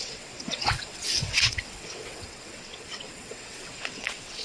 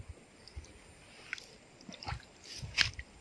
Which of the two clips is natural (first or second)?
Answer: second